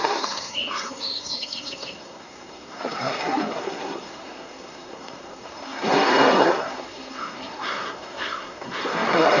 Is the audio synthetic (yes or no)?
yes